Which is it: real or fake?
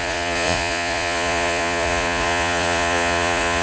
fake